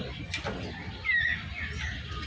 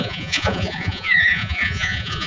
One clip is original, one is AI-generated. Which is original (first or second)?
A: first